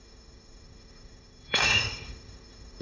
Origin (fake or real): fake